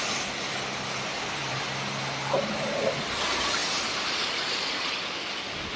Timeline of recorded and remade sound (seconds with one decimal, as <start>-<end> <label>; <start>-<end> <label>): 0.0-1.1 recorded; 1.1-1.6 remade; 1.6-3.6 recorded; 3.6-4.7 remade; 4.7-5.8 recorded